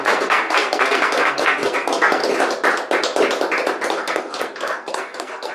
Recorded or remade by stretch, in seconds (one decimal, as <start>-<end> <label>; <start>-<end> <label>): 0.0-2.2 remade; 2.2-3.9 recorded; 3.9-5.5 remade